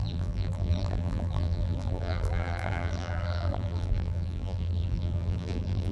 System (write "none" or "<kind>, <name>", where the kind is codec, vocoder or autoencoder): vocoder, BigVGAN v2